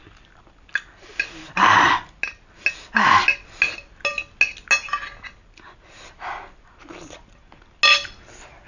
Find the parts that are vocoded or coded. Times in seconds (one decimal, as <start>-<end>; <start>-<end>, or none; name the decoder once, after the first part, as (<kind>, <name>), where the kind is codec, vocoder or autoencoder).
none